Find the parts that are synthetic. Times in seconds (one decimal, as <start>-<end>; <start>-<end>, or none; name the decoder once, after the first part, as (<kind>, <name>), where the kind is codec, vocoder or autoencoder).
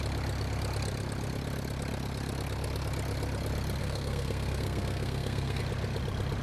3.8-5.6 (codec, SNAC)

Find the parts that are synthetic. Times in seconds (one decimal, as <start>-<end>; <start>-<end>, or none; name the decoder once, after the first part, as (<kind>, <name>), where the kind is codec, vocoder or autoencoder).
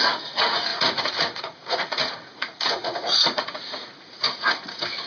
0.0-5.1 (vocoder, Vocos)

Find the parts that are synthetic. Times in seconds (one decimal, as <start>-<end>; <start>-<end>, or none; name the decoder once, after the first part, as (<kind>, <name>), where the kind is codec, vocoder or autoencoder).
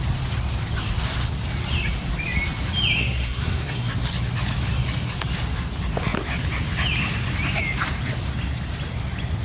3.0-3.9 (codec, SNAC)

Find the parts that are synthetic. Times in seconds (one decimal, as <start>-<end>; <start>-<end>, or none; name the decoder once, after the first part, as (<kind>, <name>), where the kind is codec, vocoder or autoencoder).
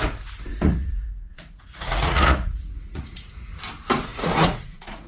0.5-3.6 (vocoder, Vocos); 4.1-5.1